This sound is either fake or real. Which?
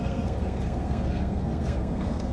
fake